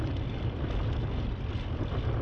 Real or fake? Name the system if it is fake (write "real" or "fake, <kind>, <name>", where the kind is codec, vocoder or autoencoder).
real